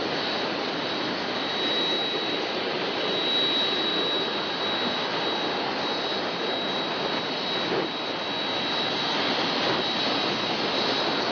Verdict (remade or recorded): recorded